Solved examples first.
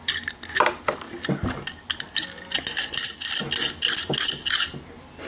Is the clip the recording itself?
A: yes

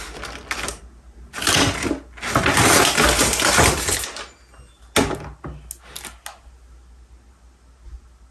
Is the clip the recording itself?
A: yes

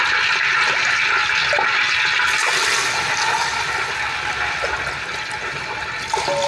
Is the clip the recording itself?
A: yes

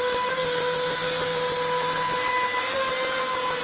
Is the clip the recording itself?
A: yes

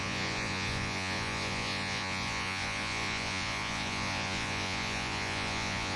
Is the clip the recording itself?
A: no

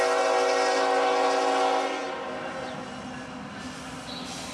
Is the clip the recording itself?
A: yes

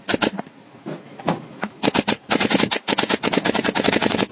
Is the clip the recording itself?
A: no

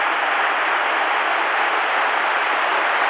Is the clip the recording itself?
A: yes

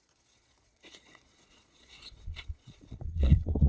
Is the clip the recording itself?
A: no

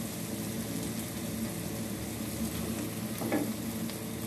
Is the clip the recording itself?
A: yes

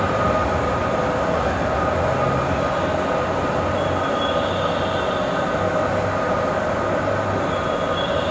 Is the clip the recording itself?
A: yes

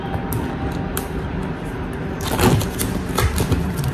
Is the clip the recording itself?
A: yes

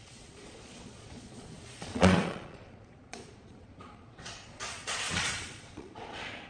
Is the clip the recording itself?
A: no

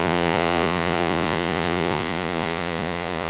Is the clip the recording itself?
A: no